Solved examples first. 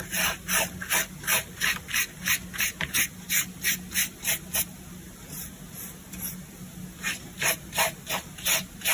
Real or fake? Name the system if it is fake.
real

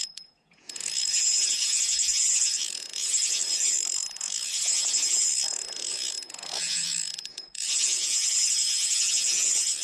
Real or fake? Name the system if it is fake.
fake, vocoder, Vocos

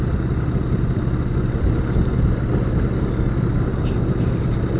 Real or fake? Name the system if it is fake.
real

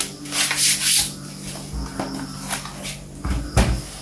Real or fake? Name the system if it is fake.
real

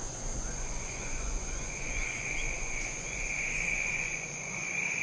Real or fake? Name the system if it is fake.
fake, vocoder, Vocos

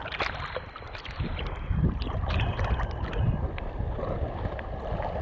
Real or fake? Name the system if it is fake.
real